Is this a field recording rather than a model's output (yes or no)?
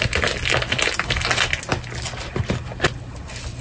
yes